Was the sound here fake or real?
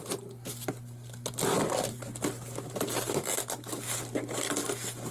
real